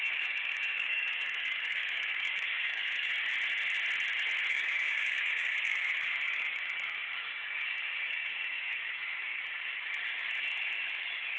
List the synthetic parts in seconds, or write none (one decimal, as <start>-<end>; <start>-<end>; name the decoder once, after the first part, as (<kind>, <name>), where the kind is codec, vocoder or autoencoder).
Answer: 0.0-3.1 (codec, DAC); 4.5-9.3